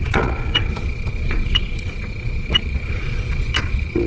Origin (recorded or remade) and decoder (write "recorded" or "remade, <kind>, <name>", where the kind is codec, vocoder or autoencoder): remade, vocoder, Vocos